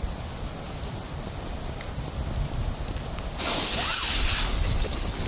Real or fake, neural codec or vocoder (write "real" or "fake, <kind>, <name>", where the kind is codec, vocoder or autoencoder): real